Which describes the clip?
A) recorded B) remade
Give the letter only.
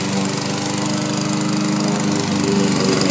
A